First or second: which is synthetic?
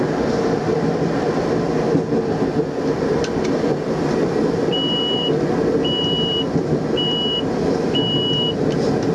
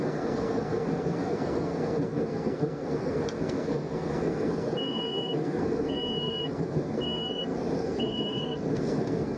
second